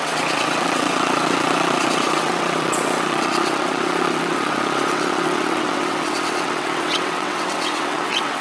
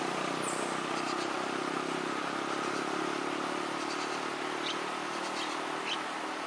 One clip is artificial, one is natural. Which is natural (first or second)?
second